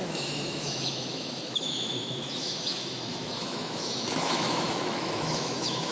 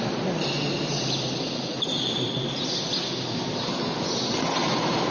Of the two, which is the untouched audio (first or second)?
second